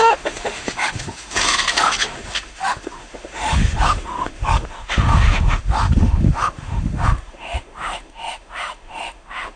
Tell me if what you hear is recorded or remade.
remade